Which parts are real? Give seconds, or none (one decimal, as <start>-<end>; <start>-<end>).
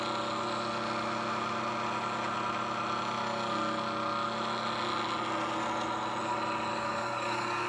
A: 0.0-6.7